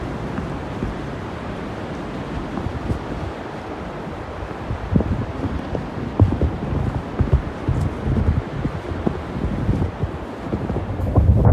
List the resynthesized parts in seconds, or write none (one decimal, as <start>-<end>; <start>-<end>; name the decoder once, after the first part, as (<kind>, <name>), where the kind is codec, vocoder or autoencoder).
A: none